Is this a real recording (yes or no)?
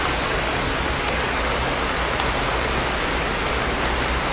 yes